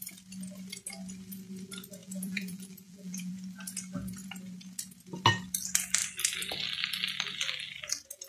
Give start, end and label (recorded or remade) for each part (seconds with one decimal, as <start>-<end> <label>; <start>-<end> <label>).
0.0-2.0 recorded; 2.0-3.3 remade; 3.3-8.3 recorded